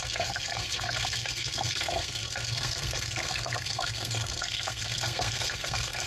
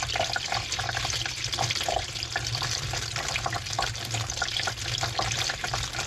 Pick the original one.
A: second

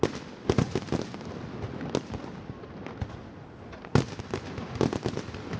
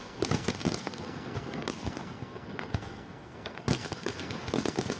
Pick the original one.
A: first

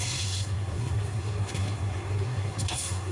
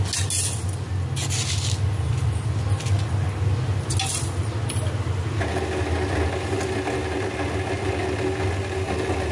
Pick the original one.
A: second